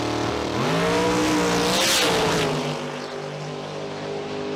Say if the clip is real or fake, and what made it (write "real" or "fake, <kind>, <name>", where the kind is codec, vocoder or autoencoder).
real